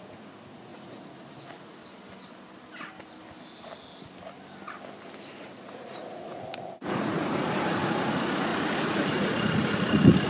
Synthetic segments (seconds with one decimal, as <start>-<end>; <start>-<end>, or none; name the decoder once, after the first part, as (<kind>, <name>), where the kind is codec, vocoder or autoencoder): 0.0-1.8 (vocoder, Vocos); 5.2-10.3